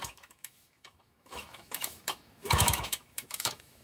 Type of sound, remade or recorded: remade